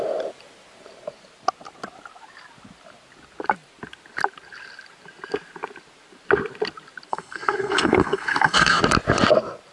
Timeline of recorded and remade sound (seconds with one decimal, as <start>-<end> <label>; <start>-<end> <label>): 0.0-7.1 recorded; 7.1-8.8 remade; 8.8-9.7 recorded